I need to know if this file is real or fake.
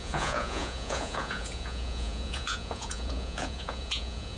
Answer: fake